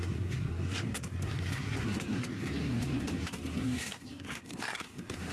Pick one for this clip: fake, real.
fake